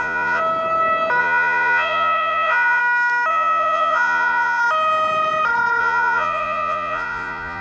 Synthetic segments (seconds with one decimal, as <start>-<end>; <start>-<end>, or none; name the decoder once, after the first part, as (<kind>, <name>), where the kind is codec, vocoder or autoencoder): 0.0-0.4 (vocoder, Vocos); 1.2-2.8; 3.3-4.6; 5.8-7.6